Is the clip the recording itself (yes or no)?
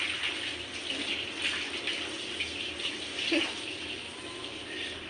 yes